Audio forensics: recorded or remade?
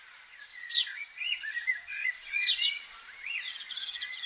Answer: remade